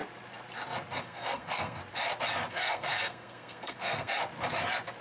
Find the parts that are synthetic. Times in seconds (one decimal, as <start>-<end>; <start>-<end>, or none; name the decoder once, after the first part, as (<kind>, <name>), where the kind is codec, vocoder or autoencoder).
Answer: 1.0-1.8 (codec, SNAC); 2.5-4.1